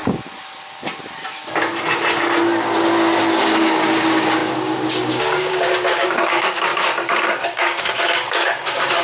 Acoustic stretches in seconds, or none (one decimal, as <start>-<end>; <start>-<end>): 0.0-3.4